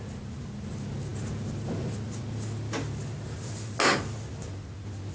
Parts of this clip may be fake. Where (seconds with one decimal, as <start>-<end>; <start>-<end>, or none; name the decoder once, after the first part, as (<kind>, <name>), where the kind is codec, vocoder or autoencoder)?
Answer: none